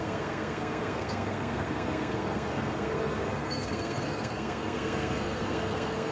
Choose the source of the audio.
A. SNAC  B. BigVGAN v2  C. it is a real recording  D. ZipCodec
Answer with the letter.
A